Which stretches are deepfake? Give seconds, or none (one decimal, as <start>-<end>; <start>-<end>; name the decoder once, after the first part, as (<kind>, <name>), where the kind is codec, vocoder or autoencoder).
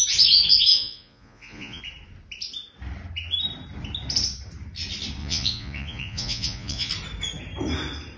0.7-1.8 (vocoder, Vocos); 5.2-6.9